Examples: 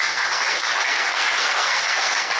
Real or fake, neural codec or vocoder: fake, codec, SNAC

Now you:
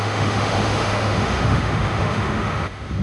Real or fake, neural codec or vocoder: fake, autoencoder, DAC-VAE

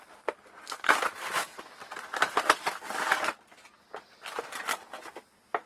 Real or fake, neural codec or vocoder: real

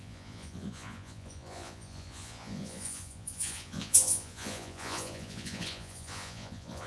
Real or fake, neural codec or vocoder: fake, vocoder, Vocos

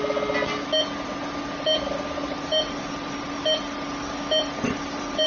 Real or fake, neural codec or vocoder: real